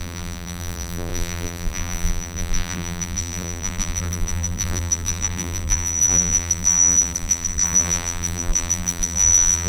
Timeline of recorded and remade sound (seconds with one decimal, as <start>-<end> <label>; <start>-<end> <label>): 0.0-9.7 remade